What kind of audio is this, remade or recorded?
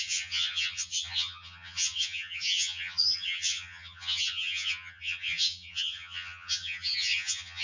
remade